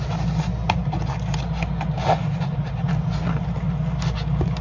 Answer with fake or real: real